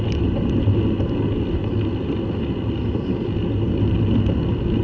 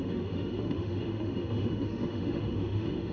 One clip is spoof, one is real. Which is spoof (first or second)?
second